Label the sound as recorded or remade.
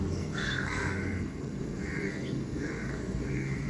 remade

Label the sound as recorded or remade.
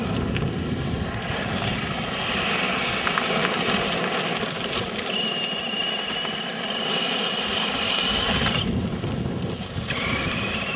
recorded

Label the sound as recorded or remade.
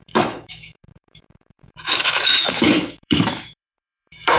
remade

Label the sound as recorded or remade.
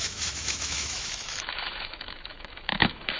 remade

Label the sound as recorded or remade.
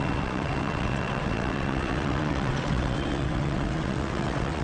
remade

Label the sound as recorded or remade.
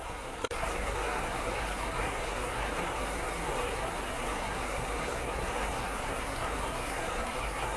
remade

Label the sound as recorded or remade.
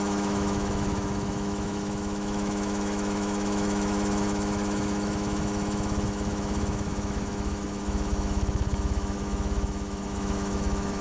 remade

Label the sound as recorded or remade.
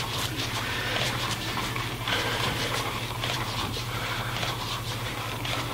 remade